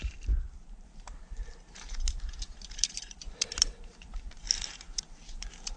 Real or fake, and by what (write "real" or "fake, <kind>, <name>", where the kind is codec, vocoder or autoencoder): fake, vocoder, BigVGAN v2